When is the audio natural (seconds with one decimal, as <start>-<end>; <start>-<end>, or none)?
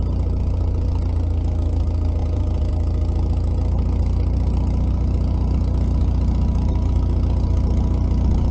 0.0-2.2; 2.7-8.5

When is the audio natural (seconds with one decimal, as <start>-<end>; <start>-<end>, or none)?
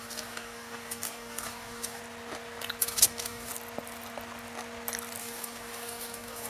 2.0-2.8; 3.5-5.2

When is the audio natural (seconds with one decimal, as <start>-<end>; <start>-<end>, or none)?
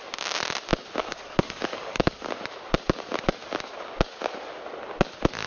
0.0-1.0; 2.3-5.5